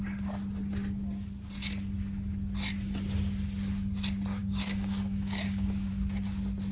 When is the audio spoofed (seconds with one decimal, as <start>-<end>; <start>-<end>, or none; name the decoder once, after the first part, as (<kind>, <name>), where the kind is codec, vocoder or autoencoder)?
4.4-5.9 (codec, DAC)